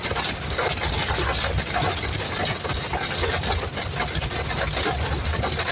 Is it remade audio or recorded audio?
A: recorded